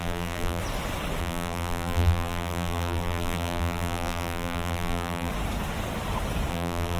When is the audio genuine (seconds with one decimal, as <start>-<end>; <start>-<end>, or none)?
0.6-1.2; 5.3-6.5